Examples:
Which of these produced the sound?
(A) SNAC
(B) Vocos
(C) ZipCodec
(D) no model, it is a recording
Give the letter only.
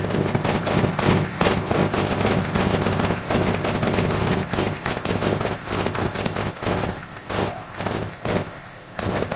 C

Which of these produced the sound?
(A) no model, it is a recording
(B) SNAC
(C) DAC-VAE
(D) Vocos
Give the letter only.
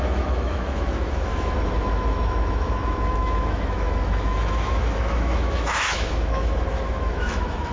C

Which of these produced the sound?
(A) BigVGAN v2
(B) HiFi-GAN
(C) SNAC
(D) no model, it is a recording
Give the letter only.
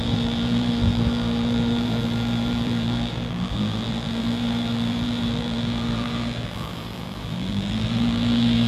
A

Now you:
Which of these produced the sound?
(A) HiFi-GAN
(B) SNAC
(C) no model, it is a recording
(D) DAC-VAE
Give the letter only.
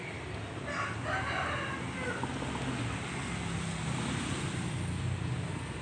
C